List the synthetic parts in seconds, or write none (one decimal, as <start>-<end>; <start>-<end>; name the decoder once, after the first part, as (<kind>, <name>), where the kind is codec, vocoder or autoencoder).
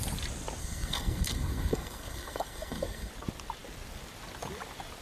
0.6-3.1 (codec, SNAC)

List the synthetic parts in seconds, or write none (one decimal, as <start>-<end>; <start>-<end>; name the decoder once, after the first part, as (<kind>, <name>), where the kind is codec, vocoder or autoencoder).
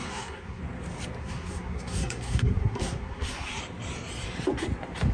0.0-0.6 (codec, SNAC); 1.2-3.6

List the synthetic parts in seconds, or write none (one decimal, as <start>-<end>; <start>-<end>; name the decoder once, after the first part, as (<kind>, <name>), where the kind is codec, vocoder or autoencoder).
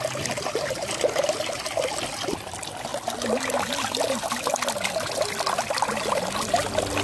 none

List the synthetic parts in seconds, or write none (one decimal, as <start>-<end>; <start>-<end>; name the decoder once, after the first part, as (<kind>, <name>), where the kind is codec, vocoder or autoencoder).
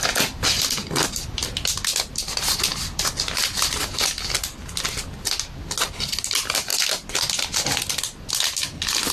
none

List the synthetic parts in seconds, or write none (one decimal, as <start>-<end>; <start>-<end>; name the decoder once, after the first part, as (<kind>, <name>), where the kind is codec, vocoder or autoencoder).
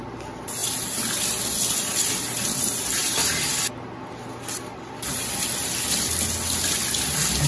none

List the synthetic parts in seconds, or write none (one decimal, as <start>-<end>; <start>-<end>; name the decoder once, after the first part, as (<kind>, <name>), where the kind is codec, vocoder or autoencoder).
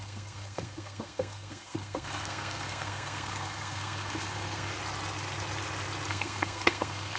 0.0-4.7 (codec, SNAC); 6.1-7.2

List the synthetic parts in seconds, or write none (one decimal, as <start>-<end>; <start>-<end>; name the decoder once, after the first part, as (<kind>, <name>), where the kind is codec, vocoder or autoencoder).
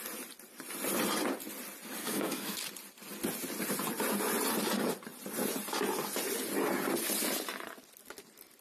2.0-2.6 (codec, SNAC)